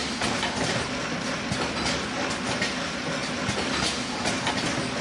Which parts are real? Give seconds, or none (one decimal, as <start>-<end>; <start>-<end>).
0.0-5.0